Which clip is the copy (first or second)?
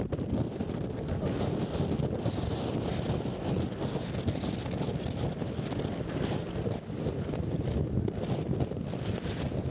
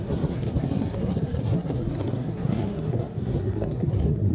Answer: second